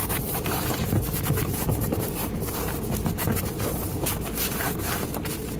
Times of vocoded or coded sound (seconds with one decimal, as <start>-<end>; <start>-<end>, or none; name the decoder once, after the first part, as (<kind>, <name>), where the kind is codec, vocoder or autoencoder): 0.0-2.8 (vocoder, BigVGAN v2); 3.2-4.1